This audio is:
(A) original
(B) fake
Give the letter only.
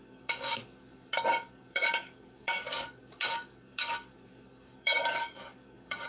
B